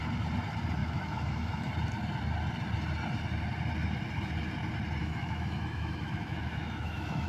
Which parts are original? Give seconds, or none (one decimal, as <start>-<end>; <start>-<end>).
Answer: 0.0-0.8; 1.7-5.0